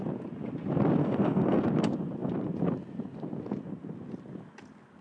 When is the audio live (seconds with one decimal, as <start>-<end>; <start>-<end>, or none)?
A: 0.0-1.0; 1.6-5.0